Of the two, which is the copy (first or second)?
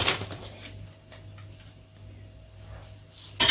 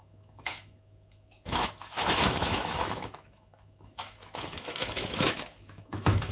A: second